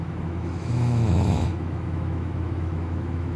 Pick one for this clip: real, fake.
fake